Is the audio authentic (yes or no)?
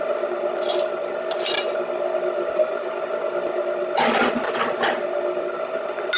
yes